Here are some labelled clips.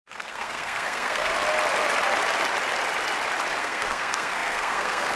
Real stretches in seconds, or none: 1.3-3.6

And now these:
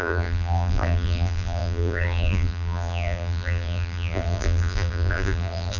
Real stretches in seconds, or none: none

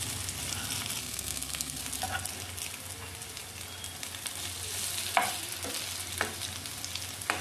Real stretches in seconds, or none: 0.0-1.0; 1.8-7.4